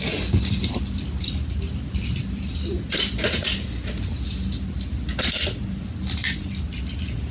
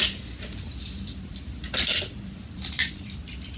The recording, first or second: first